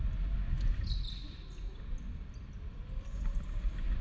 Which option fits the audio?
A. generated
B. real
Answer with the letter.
B